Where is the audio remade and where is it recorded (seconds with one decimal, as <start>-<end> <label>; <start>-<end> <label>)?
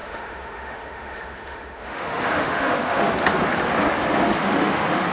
0.0-3.1 remade; 3.1-4.4 recorded; 4.4-5.1 remade